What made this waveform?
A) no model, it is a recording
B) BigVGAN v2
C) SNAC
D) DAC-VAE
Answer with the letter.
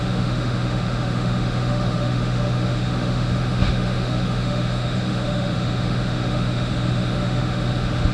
D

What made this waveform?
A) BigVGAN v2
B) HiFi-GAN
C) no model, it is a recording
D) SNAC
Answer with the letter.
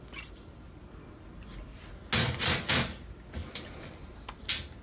C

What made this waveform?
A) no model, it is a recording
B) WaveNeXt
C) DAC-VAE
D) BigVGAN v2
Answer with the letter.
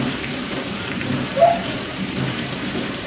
D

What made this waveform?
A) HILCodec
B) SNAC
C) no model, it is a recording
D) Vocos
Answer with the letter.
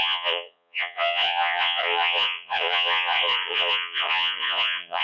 D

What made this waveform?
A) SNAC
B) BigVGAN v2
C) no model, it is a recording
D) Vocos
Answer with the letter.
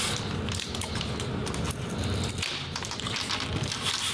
C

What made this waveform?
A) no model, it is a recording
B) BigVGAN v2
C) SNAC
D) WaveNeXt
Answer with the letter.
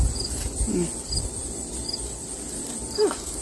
A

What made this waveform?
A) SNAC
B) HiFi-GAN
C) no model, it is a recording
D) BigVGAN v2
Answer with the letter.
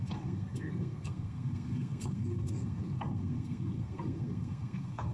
A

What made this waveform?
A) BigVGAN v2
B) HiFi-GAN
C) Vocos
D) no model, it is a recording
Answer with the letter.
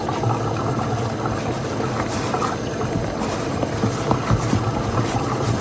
D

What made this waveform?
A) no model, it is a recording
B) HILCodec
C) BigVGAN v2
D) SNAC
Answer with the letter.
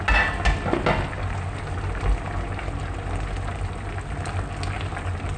A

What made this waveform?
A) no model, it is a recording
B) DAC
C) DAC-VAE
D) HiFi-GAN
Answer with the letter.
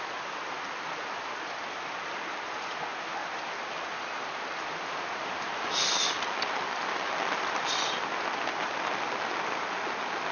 A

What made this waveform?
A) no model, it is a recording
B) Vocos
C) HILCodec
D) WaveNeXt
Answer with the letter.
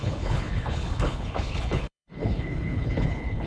C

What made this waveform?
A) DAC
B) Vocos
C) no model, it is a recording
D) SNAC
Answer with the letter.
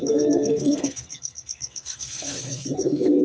D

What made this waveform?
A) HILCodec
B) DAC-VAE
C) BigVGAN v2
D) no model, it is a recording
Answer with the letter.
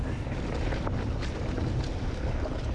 D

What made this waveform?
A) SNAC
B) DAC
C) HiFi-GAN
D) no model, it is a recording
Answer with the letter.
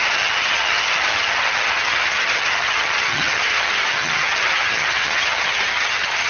C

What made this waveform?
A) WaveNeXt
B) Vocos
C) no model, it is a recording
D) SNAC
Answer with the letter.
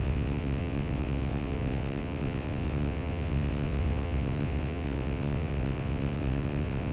A